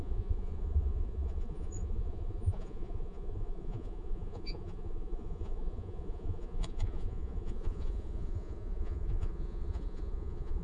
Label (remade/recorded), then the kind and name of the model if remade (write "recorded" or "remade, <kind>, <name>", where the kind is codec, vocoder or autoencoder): remade, vocoder, Vocos